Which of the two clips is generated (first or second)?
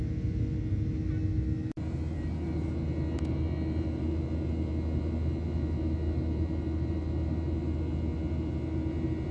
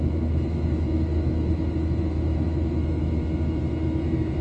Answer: second